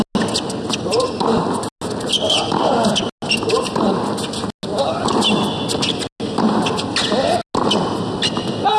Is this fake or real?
real